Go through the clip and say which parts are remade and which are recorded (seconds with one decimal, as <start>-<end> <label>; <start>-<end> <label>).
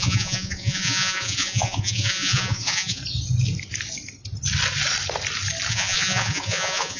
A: 0.0-3.0 remade; 3.0-5.7 recorded; 5.7-7.0 remade